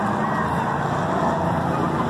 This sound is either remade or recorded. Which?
recorded